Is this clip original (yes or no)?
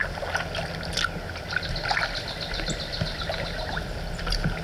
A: yes